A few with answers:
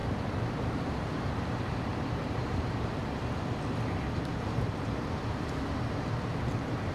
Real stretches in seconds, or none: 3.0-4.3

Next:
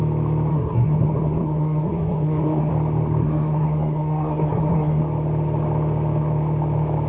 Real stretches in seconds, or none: 0.0-0.5; 2.7-3.2; 5.0-7.1

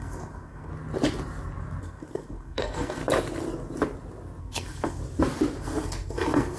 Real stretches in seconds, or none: 0.7-1.8; 3.0-4.4; 5.0-5.6

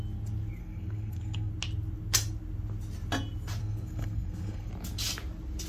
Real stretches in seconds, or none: 0.0-0.6; 1.5-3.6; 4.7-5.7